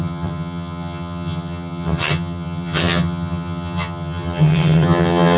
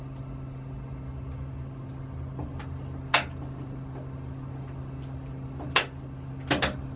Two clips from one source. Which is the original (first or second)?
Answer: second